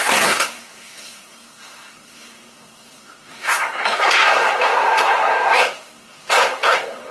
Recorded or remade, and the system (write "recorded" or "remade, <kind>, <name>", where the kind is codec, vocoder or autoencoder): remade, codec, SNAC